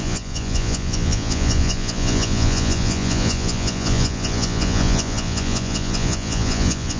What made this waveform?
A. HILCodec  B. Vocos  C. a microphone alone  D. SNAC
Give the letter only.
B